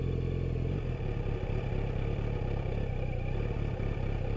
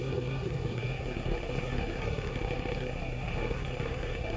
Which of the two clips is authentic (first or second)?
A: first